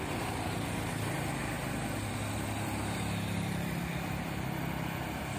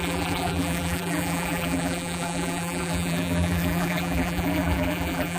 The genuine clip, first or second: first